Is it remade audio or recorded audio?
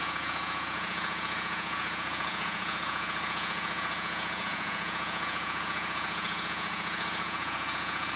remade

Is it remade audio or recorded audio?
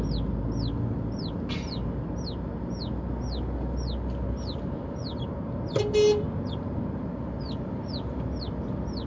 recorded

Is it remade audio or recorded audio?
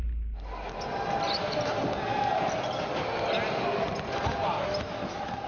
recorded